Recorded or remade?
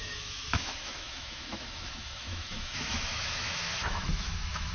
remade